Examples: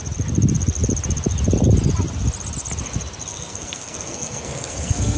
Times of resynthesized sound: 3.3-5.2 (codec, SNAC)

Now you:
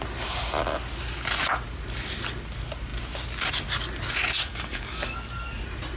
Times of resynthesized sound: 4.4-5.5 (codec, DAC)

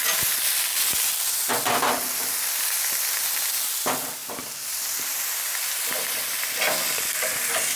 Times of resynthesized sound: 4.2-5.8 (vocoder, BigVGAN v2)

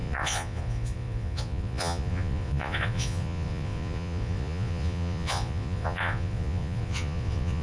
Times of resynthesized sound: 0.0-7.6 (vocoder, Vocos)

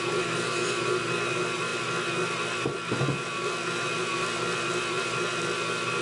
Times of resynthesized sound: none

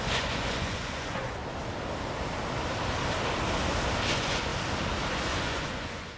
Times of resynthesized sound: 0.0-1.4 (vocoder, Vocos); 4.1-4.5; 5.1-6.2